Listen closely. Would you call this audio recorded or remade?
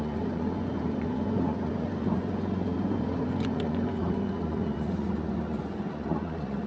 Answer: remade